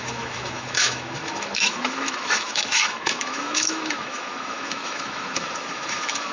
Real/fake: fake